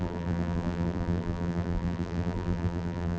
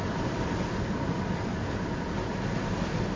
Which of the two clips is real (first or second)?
second